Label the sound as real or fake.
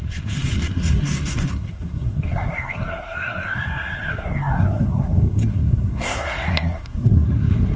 fake